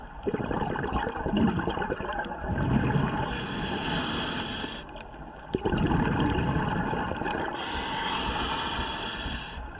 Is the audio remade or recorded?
recorded